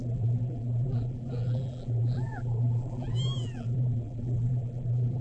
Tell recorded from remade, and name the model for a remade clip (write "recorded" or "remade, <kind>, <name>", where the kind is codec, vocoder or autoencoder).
remade, vocoder, BigVGAN v2